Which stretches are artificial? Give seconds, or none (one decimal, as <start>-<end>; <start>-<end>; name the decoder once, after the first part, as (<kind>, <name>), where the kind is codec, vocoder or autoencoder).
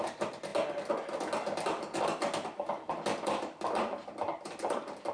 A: none